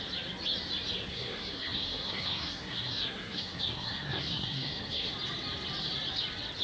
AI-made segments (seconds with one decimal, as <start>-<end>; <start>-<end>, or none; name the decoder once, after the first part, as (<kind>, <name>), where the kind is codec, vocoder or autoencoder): 1.1-5.1 (codec, SNAC)